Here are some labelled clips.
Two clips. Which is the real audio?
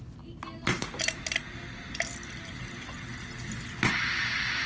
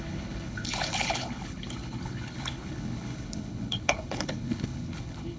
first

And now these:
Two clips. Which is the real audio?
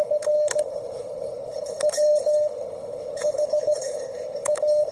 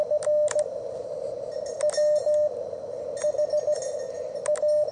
second